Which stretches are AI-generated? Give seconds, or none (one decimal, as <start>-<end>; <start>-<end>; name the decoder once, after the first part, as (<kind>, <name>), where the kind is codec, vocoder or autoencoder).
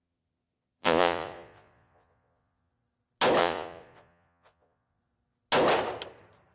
0.0-2.7 (vocoder, Vocos); 3.4-5.0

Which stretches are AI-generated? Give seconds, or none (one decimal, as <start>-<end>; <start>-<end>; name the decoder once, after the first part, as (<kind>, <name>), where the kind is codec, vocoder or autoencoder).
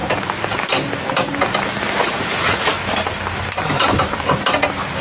2.0-2.7 (vocoder, Vocos)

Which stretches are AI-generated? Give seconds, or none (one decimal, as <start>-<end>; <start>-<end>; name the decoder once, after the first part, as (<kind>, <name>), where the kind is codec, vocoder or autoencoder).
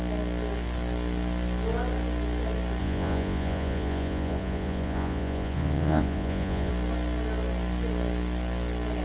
2.8-6.7 (vocoder, Vocos)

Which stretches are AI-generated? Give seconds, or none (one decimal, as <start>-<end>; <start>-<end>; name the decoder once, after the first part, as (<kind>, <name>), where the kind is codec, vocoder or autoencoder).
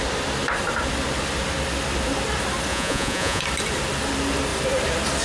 2.7-3.4 (vocoder, Vocos)